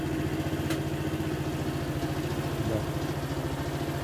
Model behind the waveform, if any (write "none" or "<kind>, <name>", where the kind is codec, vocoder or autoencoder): none